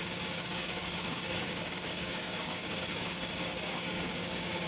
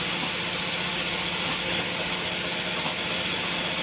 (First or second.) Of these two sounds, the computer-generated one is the first